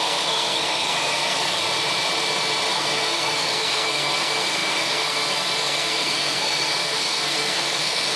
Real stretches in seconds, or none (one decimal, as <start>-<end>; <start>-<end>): 1.6-2.7